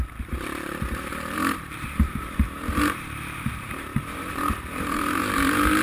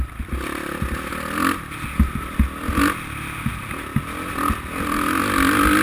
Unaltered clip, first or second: second